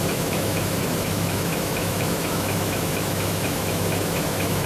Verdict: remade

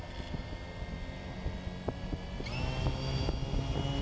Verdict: recorded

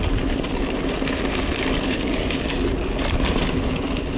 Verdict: recorded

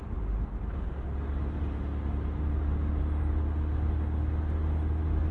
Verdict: recorded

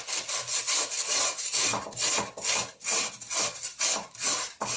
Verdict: recorded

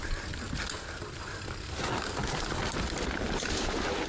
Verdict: recorded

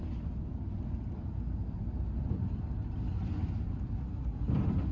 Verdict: recorded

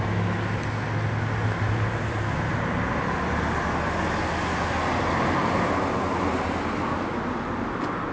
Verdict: recorded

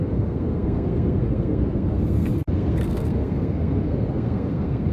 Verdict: remade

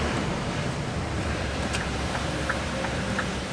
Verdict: remade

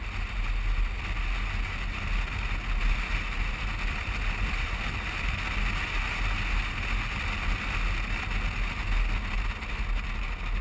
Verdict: recorded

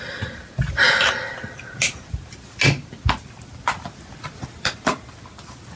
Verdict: recorded